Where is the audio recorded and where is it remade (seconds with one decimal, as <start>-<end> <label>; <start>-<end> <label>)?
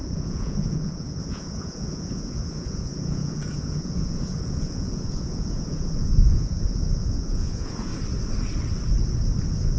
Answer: 0.0-7.9 remade; 7.9-9.4 recorded; 9.4-9.8 remade